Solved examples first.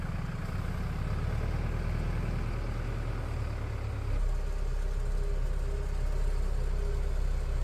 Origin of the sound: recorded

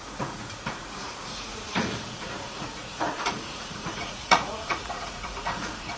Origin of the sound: remade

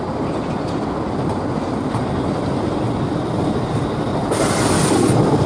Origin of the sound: recorded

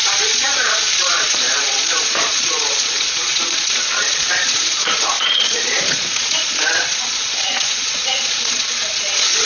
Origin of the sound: remade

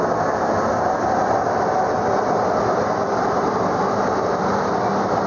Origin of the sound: recorded